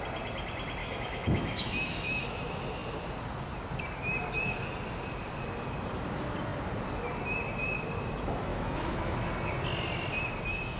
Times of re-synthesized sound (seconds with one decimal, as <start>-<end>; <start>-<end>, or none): 0.8-2.4; 8.5-9.3